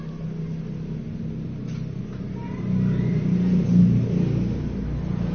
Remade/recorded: recorded